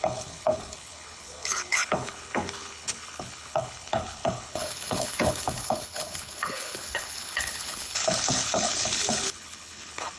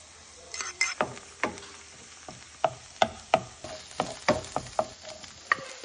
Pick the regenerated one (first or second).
first